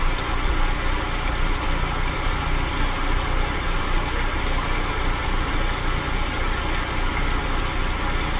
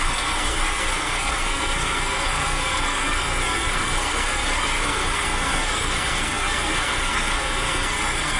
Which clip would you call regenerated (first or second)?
second